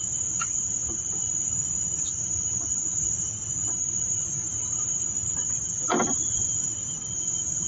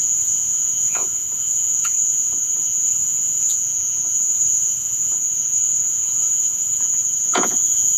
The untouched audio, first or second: first